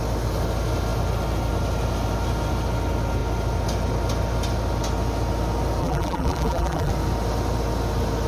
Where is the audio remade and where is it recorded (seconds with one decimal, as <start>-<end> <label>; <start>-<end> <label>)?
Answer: 0.0-5.8 recorded; 5.8-6.9 remade; 6.9-8.3 recorded